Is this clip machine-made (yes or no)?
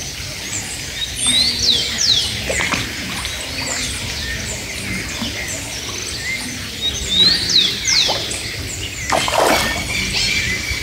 no